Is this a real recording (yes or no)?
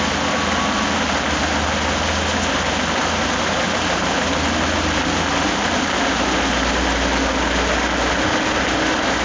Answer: yes